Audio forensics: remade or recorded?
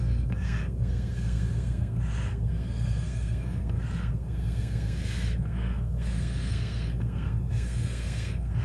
remade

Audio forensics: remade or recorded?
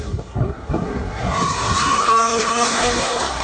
remade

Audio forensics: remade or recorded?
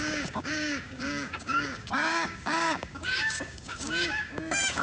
remade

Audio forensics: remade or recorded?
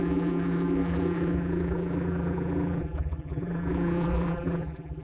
remade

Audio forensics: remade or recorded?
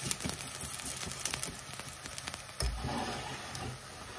recorded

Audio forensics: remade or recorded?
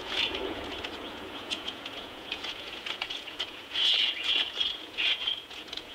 remade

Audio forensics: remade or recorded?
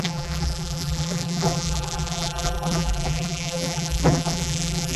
remade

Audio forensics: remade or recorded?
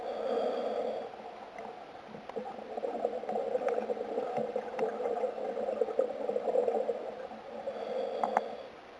recorded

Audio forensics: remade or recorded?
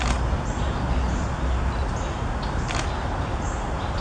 recorded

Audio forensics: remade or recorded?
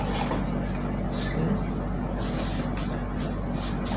recorded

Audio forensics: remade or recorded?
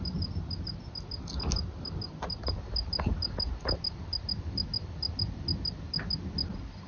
recorded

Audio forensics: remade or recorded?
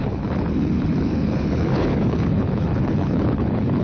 remade